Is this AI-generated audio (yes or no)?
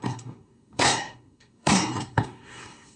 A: yes